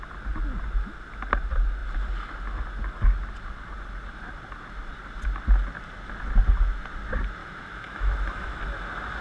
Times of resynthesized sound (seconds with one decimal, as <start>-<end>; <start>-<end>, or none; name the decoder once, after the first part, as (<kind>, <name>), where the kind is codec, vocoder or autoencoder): 7.4-8.6 (autoencoder, DAC-VAE)